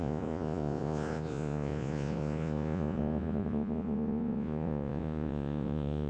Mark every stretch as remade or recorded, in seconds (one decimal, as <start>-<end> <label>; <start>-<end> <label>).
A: 0.0-6.1 remade